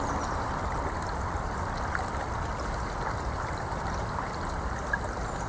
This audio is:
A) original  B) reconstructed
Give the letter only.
A